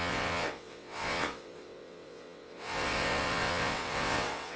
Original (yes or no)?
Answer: no